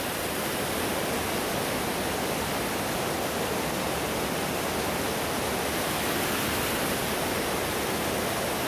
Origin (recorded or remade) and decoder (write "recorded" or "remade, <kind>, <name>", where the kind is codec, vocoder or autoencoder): recorded